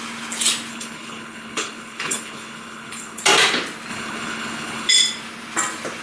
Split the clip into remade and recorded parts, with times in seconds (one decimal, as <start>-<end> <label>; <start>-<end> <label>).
0.0-0.7 recorded; 0.7-3.2 remade; 3.2-3.9 recorded; 3.9-4.9 remade; 4.9-6.0 recorded